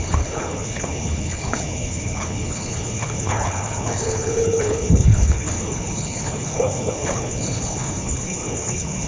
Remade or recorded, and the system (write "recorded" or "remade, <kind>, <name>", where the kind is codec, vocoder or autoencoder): remade, codec, HILCodec